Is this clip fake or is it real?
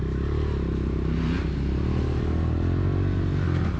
real